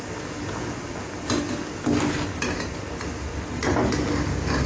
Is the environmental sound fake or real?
real